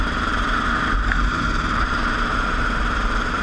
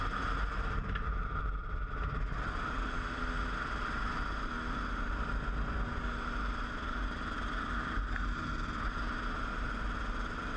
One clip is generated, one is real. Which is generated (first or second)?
first